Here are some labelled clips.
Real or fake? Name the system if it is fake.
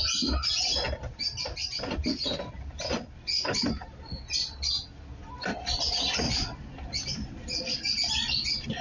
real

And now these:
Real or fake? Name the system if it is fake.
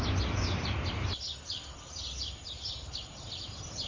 real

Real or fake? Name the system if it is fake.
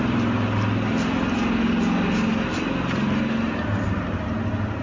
real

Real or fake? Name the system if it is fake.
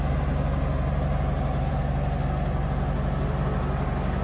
real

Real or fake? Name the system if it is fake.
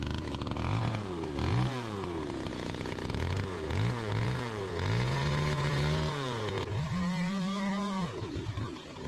fake, vocoder, Vocos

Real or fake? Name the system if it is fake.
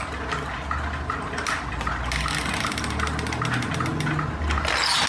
real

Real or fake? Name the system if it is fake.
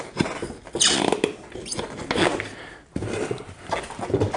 real